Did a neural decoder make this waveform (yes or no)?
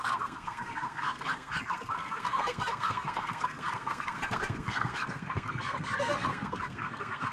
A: yes